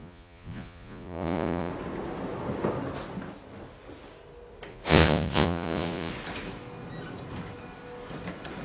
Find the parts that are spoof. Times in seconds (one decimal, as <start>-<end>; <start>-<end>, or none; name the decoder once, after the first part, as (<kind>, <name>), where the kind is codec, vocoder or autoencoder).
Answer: 0.0-1.7 (vocoder, Vocos); 4.7-6.1

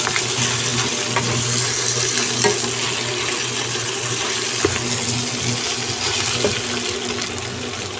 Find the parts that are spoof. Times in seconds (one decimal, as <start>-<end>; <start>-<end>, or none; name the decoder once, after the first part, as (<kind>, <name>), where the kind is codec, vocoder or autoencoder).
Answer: none

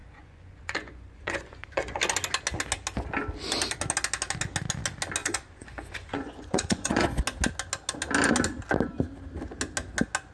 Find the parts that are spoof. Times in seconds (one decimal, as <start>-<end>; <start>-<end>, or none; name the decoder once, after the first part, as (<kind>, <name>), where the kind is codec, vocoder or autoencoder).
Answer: 0.0-2.0 (vocoder, Vocos); 5.2-7.2

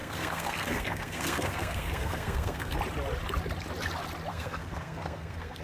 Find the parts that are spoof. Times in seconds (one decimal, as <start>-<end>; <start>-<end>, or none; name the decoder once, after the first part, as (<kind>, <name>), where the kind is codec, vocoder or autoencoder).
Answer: 0.0-2.8 (codec, SNAC); 4.3-5.6

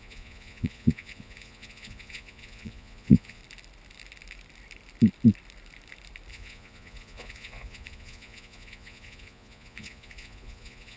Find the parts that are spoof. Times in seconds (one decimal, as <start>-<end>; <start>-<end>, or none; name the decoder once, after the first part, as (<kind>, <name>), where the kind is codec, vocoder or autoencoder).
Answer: 0.0-3.4 (vocoder, Vocos); 6.3-11.0

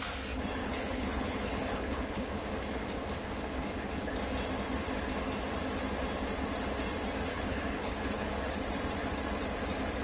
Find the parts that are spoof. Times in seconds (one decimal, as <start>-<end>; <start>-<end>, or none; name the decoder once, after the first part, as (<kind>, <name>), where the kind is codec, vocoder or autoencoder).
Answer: 0.6-2.3 (codec, HILCodec); 7.3-8.3

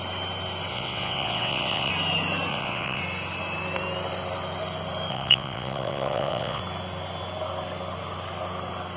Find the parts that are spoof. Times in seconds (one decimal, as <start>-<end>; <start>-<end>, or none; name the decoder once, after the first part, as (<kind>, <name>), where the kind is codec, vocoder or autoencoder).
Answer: 0.7-1.9 (vocoder, WaveNeXt); 2.5-3.0; 5.1-6.6